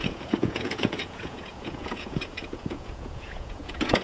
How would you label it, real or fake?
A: fake